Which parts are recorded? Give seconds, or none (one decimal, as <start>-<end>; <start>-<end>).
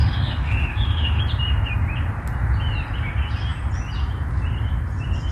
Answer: 1.2-5.3